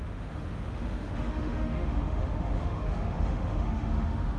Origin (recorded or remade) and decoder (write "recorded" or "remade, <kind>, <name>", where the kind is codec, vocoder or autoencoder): remade, autoencoder, DAC-VAE